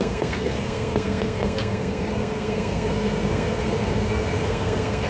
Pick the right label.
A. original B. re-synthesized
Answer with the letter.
B